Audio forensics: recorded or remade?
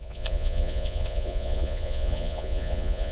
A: remade